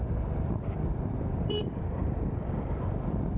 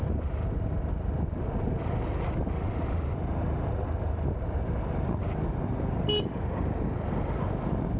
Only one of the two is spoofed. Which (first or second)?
first